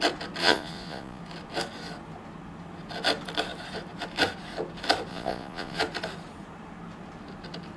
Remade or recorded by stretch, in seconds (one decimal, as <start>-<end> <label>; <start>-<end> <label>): 0.0-0.4 recorded; 0.4-1.2 remade; 1.2-5.1 recorded; 5.1-5.8 remade; 5.8-7.8 recorded